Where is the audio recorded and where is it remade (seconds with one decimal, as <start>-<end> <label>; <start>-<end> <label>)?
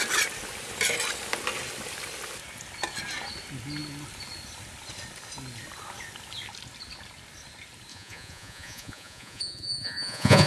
0.0-7.9 recorded; 7.9-10.5 remade